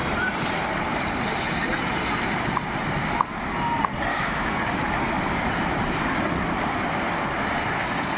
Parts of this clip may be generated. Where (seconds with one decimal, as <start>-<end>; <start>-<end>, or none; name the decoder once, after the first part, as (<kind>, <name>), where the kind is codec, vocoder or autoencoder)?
4.1-4.8 (codec, DAC)